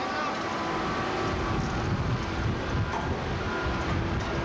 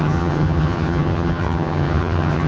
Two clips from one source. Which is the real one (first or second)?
first